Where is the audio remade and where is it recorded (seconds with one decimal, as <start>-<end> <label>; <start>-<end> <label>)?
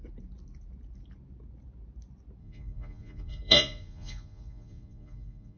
0.0-2.4 recorded; 2.4-5.6 remade